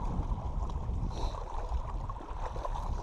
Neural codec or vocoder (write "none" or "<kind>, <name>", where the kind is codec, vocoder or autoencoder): none